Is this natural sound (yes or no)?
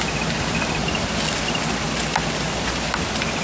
yes